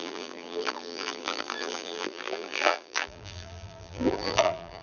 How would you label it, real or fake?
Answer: fake